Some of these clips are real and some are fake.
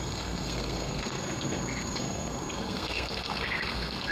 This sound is fake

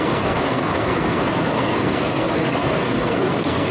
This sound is fake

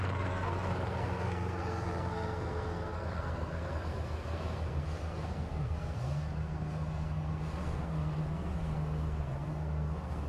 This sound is fake